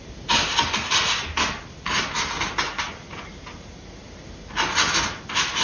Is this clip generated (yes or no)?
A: no